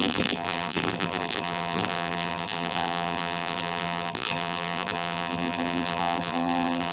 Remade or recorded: remade